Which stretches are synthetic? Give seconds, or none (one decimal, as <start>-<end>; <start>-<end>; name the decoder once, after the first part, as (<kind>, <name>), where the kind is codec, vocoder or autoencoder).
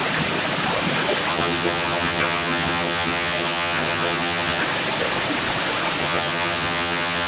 1.3-4.6 (vocoder, HiFi-GAN); 6.0-7.3